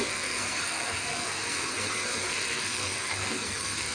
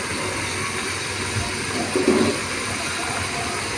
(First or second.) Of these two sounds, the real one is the second